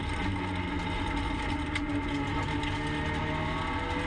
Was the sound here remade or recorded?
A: recorded